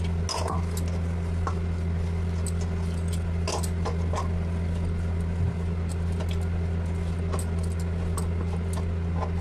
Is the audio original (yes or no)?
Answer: yes